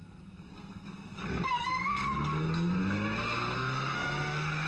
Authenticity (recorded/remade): remade